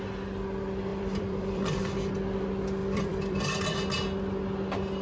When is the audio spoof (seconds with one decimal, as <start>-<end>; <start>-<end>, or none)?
0.9-2.1; 2.8-3.8